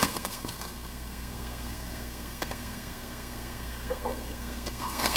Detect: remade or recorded remade